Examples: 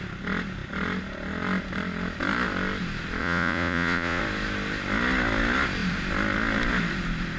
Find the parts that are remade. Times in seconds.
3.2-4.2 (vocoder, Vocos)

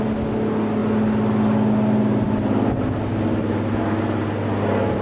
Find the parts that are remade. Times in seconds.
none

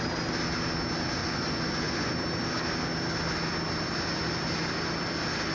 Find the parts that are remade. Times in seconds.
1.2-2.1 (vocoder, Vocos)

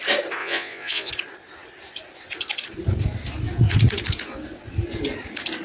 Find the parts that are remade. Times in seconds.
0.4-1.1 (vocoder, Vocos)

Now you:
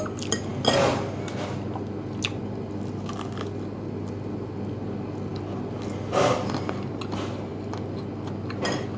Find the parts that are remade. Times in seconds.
none